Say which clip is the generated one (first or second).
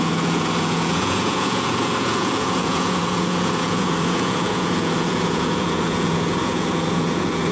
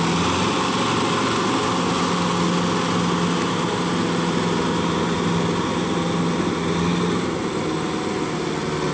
first